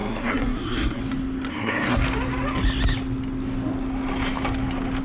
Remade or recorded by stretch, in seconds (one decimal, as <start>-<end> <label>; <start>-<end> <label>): 0.0-1.0 remade; 1.0-1.5 recorded; 1.5-2.0 remade; 2.0-5.0 recorded